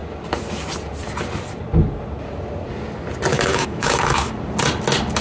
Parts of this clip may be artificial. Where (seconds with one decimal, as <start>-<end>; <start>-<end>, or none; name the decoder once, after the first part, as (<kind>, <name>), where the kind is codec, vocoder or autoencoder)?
3.3-4.3 (autoencoder, DAC-VAE)